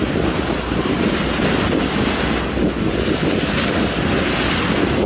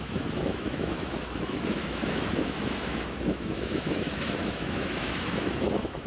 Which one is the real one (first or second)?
first